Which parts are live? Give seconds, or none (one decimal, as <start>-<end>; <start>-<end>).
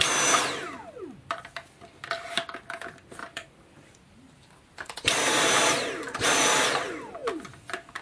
0.0-3.2; 6.6-8.0